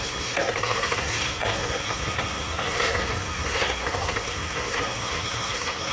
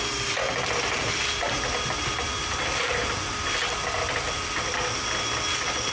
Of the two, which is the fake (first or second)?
first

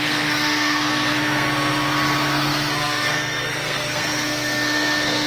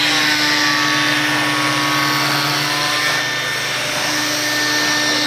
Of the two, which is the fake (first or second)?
first